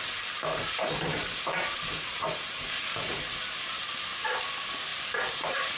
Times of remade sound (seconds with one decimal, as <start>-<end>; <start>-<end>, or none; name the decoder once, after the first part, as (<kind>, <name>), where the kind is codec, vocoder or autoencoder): 0.5-3.2 (vocoder, BigVGAN v2); 4.9-5.8